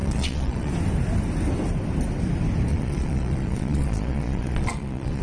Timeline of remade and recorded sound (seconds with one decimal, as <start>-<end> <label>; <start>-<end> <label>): 0.0-0.7 remade; 0.7-2.7 recorded; 2.7-5.2 remade